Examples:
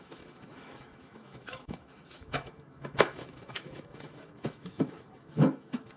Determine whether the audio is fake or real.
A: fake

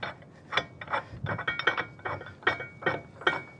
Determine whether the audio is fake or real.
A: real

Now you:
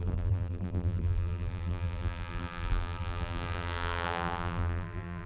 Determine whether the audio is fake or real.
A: fake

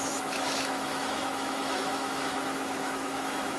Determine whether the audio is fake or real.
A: fake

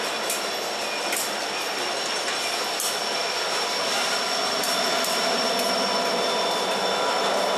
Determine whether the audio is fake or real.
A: real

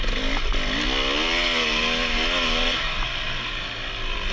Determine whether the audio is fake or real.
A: real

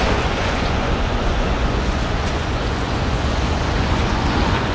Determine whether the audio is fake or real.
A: fake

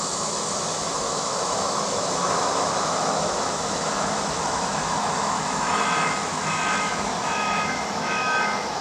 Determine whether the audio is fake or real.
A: fake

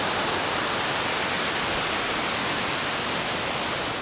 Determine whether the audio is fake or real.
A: real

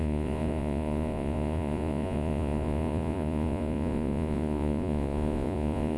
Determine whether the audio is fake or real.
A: fake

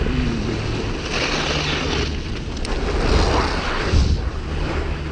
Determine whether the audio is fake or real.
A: real